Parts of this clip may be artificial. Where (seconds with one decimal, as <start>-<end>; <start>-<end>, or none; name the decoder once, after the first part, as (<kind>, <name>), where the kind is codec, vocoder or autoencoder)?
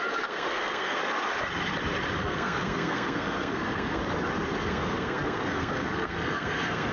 0.0-1.0 (codec, SNAC); 2.1-4.0; 4.6-6.9